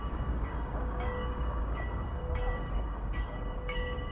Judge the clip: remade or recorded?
remade